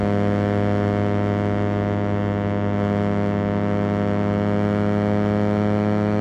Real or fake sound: real